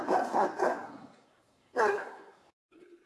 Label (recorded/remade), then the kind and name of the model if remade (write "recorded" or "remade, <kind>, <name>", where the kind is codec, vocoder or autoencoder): remade, codec, SNAC